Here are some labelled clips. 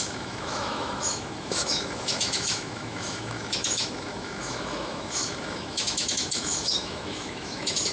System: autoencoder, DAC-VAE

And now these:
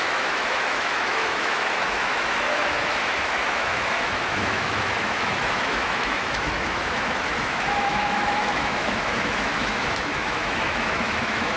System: autoencoder, DAC-VAE